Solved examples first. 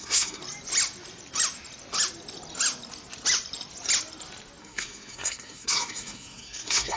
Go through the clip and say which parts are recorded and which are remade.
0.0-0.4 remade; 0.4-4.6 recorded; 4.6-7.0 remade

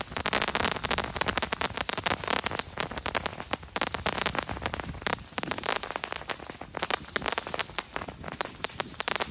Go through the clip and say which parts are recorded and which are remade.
0.0-9.3 recorded

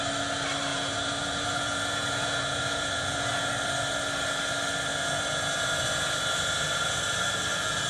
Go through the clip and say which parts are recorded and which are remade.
0.0-0.7 recorded; 0.7-3.5 remade; 3.5-4.9 recorded; 4.9-7.0 remade; 7.0-7.9 recorded